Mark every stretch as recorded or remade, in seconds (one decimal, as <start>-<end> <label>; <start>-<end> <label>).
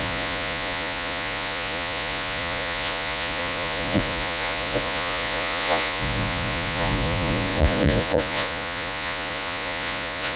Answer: 0.0-10.4 remade